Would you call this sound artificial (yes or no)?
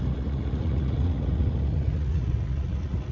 yes